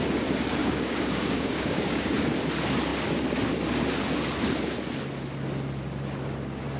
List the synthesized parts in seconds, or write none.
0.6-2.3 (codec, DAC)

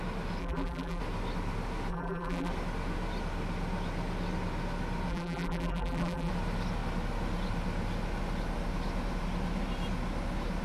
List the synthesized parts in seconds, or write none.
0.4-1.0 (vocoder, BigVGAN v2); 1.9-2.5; 5.1-6.3

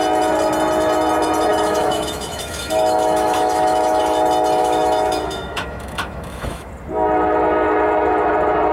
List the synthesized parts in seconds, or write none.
1.5-4.0 (autoencoder, DAC-VAE); 4.6-6.7

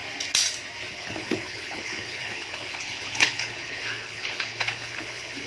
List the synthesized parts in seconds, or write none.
0.9-5.5 (codec, HILCodec)

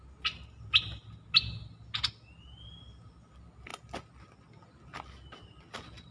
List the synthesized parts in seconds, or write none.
none

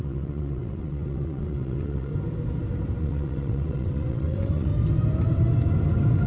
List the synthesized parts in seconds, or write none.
0.0-2.1 (vocoder, WaveNeXt); 3.0-4.7

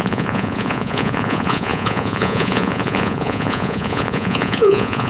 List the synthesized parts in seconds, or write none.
0.0-5.1 (vocoder, Vocos)

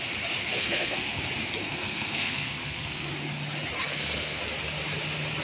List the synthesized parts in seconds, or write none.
0.4-1.2 (codec, SNAC); 1.6-3.1; 3.9-4.4